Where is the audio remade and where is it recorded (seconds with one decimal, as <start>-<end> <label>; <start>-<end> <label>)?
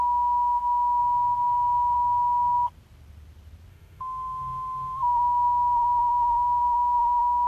0.0-1.0 remade; 1.0-3.7 recorded; 3.7-7.5 remade